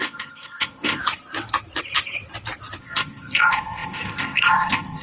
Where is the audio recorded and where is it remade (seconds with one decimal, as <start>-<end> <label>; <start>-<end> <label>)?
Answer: 0.0-1.0 remade; 1.0-2.8 recorded; 2.8-5.0 remade

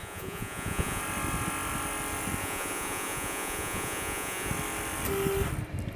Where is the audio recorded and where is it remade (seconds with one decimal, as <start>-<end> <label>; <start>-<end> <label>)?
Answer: 0.0-1.0 remade; 1.0-2.4 recorded; 2.4-4.5 remade; 4.5-6.0 recorded

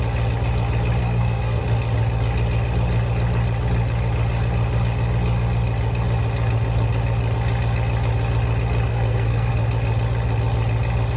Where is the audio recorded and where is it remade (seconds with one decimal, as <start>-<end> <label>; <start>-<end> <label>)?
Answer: 0.0-1.0 recorded; 1.0-1.6 remade; 1.6-8.9 recorded; 8.9-9.5 remade; 9.5-11.2 recorded

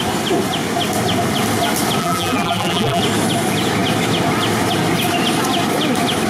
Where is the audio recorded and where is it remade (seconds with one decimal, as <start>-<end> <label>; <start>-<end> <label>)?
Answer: 0.0-2.0 recorded; 2.0-3.0 remade; 3.0-6.3 recorded